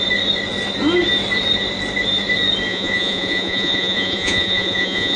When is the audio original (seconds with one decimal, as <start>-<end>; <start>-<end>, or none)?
0.0-2.7